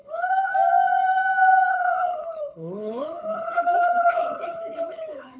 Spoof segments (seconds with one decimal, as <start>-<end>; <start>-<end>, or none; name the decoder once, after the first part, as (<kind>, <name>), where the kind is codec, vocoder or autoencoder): 0.0-0.5 (codec, HILCodec); 1.7-5.4

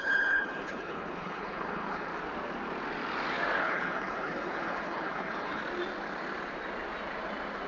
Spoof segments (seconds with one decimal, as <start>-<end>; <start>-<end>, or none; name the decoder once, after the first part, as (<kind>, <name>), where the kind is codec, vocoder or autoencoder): 0.0-2.1 (codec, HILCodec); 3.6-5.6

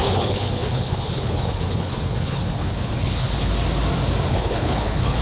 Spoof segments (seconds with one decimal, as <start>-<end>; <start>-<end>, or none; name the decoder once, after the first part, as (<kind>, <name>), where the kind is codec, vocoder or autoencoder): 0.0-3.5 (codec, HILCodec); 4.3-5.2

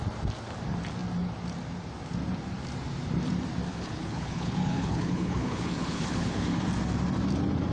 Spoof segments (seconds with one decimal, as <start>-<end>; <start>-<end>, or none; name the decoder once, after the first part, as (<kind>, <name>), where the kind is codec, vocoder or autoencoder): 3.7-6.6 (codec, HILCodec)

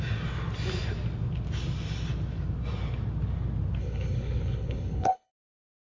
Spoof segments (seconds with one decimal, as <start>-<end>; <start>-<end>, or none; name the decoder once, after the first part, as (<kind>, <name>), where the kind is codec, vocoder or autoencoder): 3.8-5.3 (codec, HILCodec)

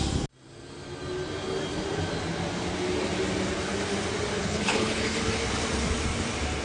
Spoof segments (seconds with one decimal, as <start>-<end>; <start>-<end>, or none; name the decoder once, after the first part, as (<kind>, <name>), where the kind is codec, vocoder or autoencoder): 4.4-5.2 (codec, HILCodec)

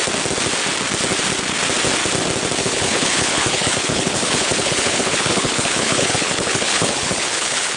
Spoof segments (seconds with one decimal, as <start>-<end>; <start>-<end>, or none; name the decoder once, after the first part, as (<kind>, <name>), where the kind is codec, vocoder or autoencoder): 2.6-7.8 (codec, HILCodec)